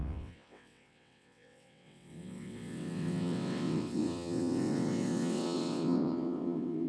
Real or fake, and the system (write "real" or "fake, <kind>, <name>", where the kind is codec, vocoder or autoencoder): fake, vocoder, WaveNeXt